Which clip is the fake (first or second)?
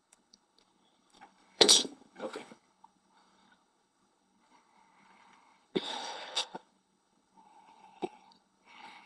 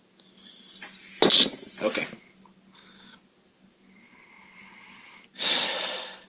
first